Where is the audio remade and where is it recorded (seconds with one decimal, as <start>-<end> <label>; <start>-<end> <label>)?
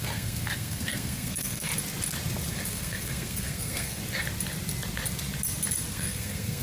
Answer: 0.0-1.7 remade; 1.7-2.5 recorded; 2.5-4.0 remade; 4.0-5.9 recorded; 5.9-6.6 remade